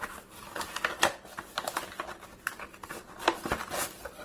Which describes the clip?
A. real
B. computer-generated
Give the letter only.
A